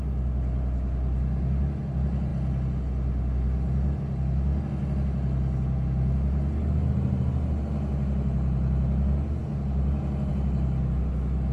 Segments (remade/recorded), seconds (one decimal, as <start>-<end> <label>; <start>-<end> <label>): 0.0-11.5 recorded